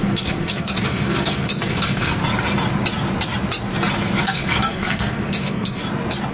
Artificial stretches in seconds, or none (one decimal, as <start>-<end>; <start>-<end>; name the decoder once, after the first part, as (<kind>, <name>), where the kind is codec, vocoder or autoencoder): 0.0-2.2 (codec, SNAC); 4.2-5.8